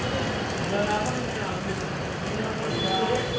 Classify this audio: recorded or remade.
recorded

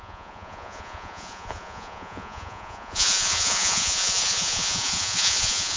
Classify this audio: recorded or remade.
remade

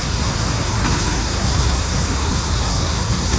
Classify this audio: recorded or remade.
remade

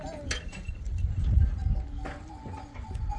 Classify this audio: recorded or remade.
recorded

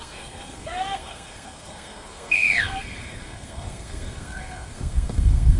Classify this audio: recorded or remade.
remade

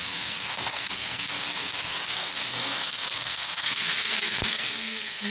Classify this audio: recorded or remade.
remade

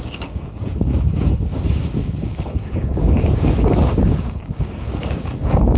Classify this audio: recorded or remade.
remade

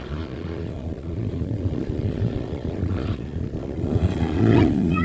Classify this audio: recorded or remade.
remade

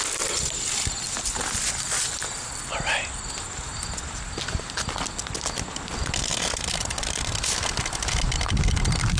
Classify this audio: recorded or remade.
recorded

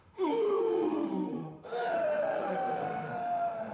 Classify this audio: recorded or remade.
remade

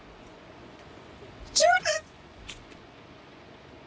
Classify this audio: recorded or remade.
remade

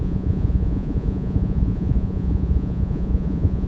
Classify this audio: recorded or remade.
remade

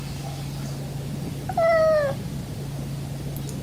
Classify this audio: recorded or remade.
recorded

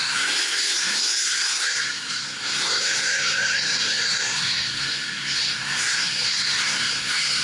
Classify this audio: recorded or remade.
remade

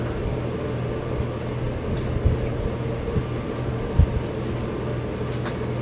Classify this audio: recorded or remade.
recorded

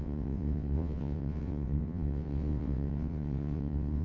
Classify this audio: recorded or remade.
remade